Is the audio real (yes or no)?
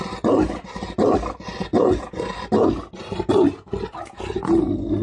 yes